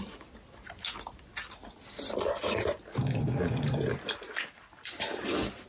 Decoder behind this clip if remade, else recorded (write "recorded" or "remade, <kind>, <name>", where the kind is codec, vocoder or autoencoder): recorded